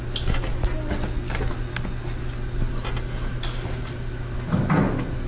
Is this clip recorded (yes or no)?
yes